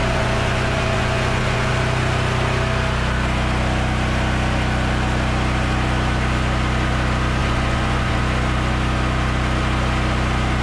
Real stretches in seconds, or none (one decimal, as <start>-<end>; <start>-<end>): 1.7-7.4; 8.2-10.6